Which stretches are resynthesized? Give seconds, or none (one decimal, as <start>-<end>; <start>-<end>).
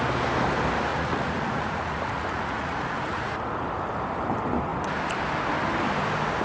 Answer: 0.9-3.3